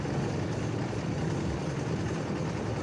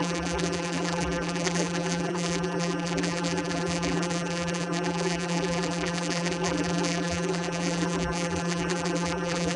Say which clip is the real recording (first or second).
first